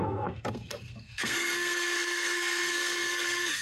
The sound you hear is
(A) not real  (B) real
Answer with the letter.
A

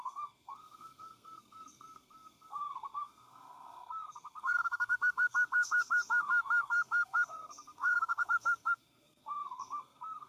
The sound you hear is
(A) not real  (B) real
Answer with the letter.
A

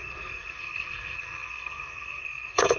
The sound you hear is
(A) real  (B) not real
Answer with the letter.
B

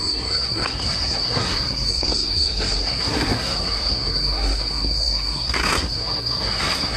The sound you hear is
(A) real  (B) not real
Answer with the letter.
B